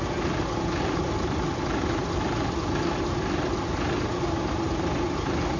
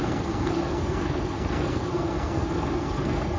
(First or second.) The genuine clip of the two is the first